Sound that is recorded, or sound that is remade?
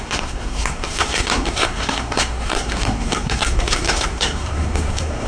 remade